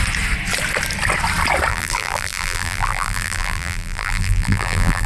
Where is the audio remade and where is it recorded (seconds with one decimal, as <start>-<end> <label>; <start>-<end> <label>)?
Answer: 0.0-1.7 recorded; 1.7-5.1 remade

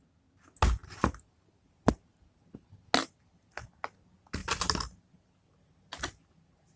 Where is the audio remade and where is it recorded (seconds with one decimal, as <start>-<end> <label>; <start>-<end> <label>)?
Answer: 0.0-6.8 recorded

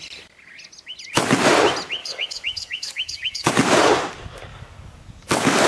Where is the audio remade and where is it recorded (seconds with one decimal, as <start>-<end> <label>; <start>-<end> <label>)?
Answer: 0.0-2.0 recorded; 2.0-3.5 remade; 3.5-4.5 recorded; 4.5-5.7 remade

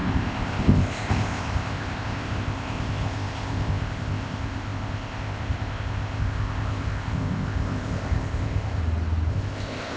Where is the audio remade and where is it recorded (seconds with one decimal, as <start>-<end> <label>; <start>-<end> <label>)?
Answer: 0.0-8.8 remade; 8.8-9.3 recorded; 9.3-10.0 remade